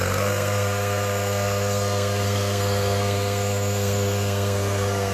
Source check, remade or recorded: remade